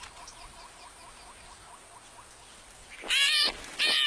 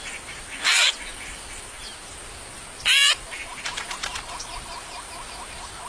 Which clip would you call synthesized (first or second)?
second